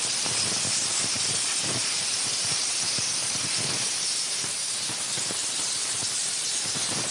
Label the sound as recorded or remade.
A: remade